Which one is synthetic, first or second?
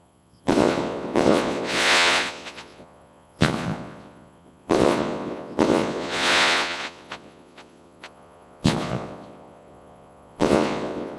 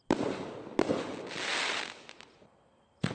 first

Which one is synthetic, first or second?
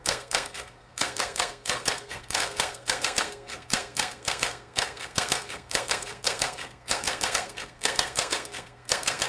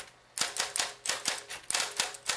first